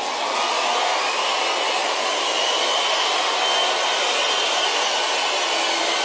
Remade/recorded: recorded